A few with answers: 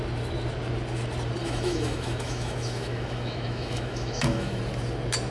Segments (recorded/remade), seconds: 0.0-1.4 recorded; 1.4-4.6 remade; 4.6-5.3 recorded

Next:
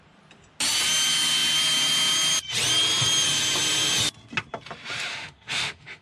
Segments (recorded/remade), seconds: 0.0-5.1 recorded; 5.1-6.0 remade

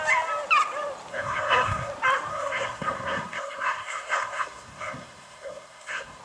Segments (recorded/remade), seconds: 0.0-1.1 recorded; 1.1-1.9 remade; 1.9-2.3 recorded; 2.3-6.2 remade

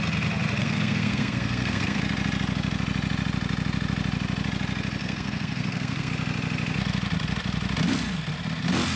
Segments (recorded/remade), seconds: 0.0-0.6 recorded; 0.6-2.0 remade; 2.0-5.0 recorded; 5.0-6.1 remade; 6.1-8.9 recorded

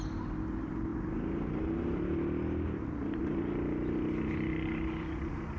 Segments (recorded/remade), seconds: 0.0-5.6 recorded